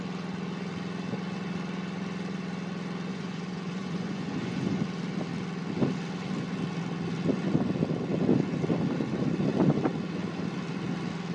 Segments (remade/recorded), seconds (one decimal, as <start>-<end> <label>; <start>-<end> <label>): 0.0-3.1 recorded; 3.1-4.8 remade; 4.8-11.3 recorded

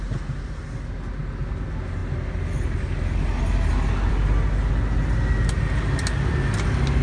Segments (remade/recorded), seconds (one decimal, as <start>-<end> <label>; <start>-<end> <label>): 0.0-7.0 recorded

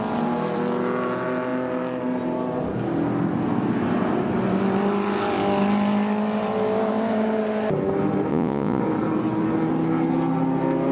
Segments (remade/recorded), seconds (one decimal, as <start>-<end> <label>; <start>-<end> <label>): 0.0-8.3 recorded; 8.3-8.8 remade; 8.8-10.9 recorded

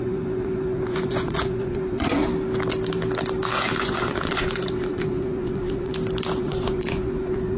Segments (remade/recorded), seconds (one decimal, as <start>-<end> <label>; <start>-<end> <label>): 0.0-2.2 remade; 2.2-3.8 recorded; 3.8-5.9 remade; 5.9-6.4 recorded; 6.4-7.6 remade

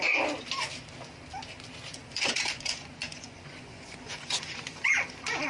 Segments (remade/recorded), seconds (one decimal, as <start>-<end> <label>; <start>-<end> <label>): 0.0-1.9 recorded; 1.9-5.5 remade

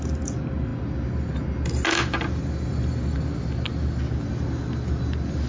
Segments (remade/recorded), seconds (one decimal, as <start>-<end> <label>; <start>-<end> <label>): 0.0-5.5 recorded